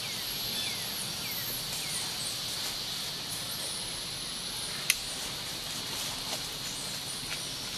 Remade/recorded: recorded